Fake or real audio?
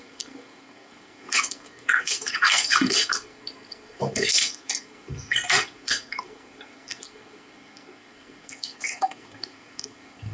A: fake